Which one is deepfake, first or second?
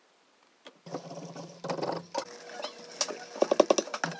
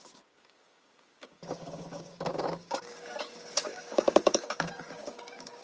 second